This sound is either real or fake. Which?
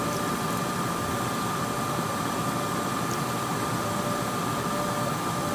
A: fake